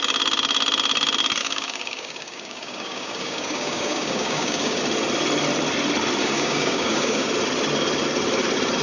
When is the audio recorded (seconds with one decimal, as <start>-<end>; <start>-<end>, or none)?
0.0-1.4; 4.8-6.2; 7.3-8.8